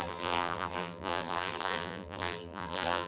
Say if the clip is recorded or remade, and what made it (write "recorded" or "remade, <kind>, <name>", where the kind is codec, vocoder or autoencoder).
remade, vocoder, BigVGAN v2